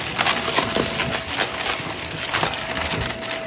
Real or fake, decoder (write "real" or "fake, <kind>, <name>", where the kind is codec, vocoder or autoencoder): real